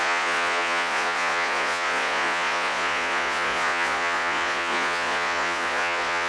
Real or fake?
fake